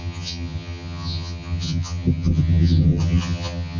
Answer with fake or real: fake